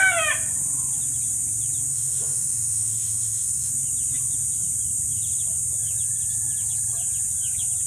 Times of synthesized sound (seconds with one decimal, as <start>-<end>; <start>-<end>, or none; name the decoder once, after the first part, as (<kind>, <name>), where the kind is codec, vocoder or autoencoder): 1.9-3.7 (autoencoder, DAC-VAE)